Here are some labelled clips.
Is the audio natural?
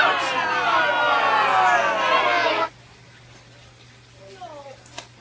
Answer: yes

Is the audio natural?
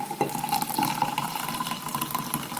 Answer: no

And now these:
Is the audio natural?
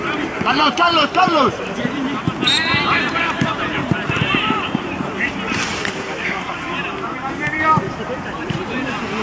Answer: no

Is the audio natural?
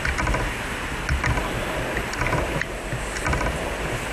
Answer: yes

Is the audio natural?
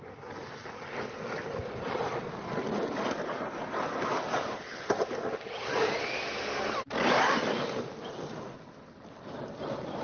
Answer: yes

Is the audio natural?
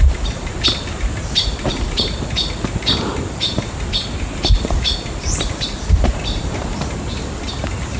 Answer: no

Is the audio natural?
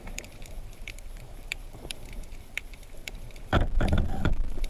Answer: no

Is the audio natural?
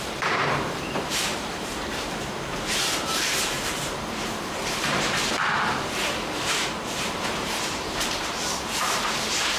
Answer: no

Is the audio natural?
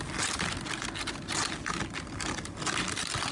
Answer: yes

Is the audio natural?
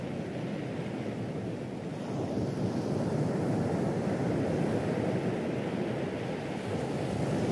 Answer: yes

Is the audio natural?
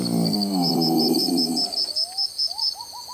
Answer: yes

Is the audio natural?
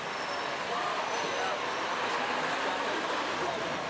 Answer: yes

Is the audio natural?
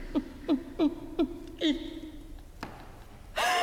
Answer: yes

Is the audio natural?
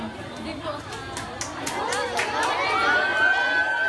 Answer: yes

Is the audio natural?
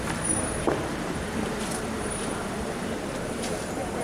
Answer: no